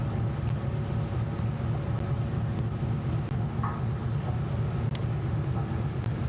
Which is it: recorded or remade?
recorded